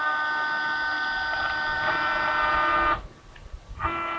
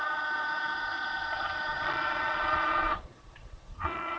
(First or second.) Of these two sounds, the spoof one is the second